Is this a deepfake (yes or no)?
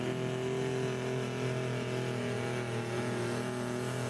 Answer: no